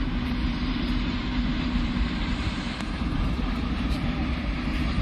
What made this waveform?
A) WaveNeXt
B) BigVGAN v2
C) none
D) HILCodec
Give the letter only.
B